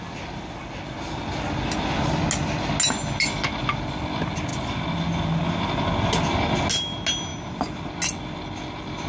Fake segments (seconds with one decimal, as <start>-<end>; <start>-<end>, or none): 7.3-7.9